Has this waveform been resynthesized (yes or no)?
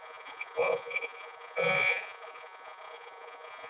yes